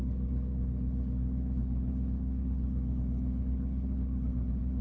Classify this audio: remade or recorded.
remade